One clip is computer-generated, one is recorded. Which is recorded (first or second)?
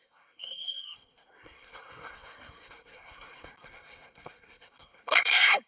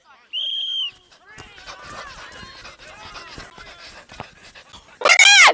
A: second